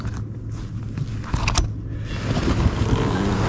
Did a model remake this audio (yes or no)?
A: no